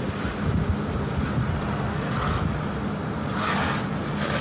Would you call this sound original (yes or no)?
yes